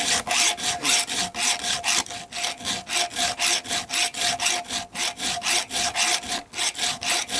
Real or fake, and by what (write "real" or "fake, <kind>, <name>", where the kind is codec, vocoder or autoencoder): real